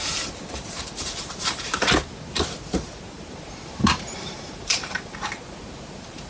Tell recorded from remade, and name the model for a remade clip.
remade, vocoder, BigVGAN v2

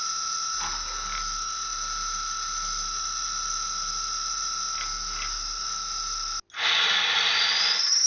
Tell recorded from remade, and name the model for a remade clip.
recorded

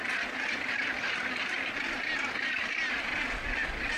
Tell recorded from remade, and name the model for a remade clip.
recorded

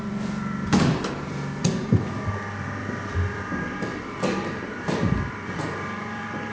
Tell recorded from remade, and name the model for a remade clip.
remade, vocoder, BigVGAN v2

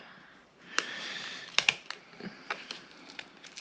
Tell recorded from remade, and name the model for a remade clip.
remade, vocoder, BigVGAN v2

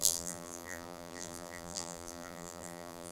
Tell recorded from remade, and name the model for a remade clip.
remade, vocoder, BigVGAN v2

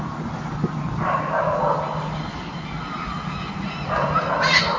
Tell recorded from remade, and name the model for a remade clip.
recorded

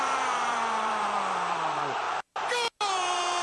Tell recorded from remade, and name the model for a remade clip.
remade, vocoder, BigVGAN v2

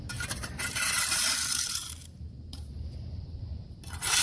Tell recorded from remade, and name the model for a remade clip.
remade, vocoder, BigVGAN v2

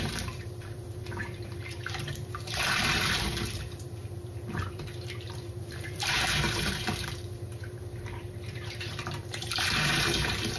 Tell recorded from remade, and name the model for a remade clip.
remade, vocoder, BigVGAN v2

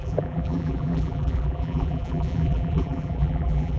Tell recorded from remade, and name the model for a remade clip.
remade, vocoder, BigVGAN v2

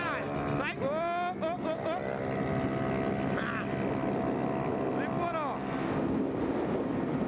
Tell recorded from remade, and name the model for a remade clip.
recorded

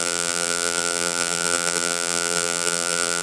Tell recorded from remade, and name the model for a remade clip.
remade, vocoder, BigVGAN v2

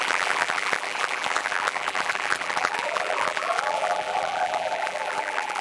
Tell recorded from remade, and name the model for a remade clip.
remade, vocoder, BigVGAN v2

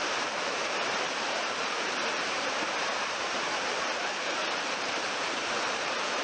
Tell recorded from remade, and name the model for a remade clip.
remade, vocoder, BigVGAN v2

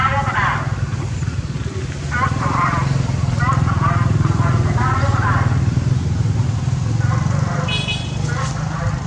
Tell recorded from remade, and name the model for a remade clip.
recorded